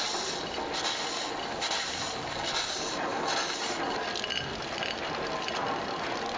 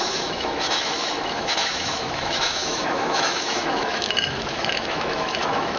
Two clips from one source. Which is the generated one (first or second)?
second